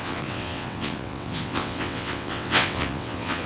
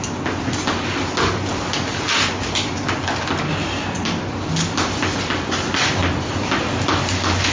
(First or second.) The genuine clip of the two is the second